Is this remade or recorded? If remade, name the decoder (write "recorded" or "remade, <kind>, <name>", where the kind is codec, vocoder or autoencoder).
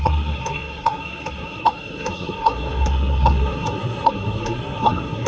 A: remade, codec, SNAC